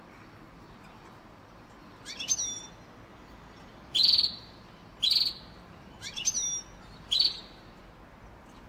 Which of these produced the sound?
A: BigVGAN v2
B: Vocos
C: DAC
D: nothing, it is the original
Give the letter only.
D